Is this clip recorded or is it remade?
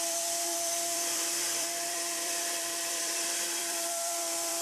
remade